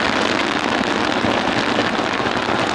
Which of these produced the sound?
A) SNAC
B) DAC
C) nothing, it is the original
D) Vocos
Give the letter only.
C